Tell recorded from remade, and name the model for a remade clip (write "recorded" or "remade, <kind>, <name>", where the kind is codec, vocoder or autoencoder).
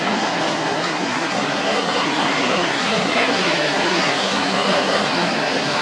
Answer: remade, codec, SNAC